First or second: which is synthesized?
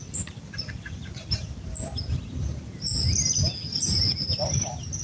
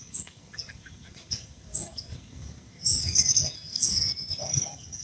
second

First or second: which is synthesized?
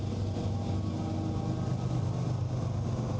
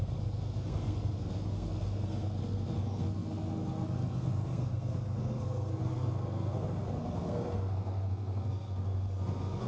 second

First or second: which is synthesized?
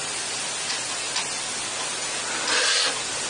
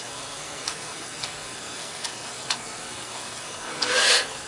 second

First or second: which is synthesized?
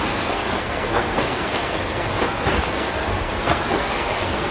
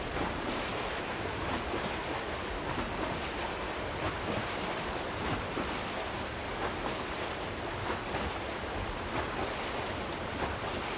first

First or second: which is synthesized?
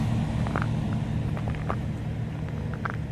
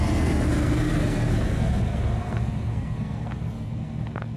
second